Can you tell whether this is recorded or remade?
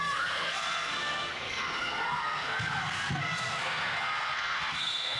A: remade